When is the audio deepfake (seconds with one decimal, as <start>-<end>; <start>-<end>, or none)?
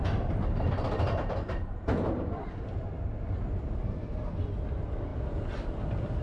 none